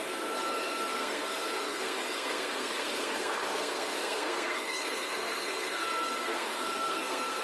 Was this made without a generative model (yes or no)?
no